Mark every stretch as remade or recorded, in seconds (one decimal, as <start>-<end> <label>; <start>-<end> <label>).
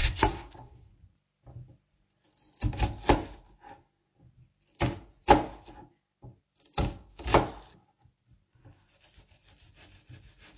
0.0-0.9 remade; 0.9-10.6 recorded